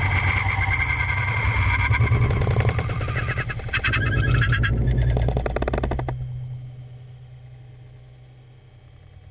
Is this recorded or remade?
recorded